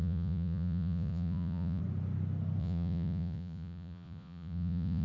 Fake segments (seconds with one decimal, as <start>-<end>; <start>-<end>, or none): 0.0-1.8; 2.6-5.0